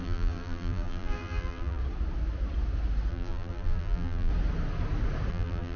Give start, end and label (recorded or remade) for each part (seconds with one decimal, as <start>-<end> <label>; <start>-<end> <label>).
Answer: 0.0-1.8 remade; 1.8-3.1 recorded; 3.1-4.3 remade; 4.3-5.3 recorded; 5.3-5.8 remade